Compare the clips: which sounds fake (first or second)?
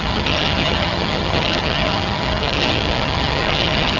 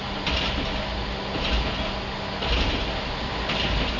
first